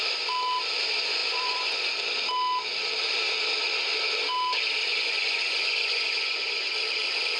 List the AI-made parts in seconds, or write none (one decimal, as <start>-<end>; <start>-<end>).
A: 1.2-1.9; 4.9-6.7